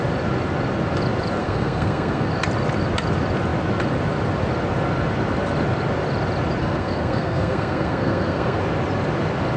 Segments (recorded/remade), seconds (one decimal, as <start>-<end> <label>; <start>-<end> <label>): 0.0-1.4 recorded; 1.4-2.3 remade; 2.3-6.6 recorded; 6.6-8.6 remade; 8.6-9.6 recorded